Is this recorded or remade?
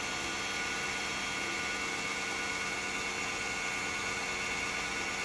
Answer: recorded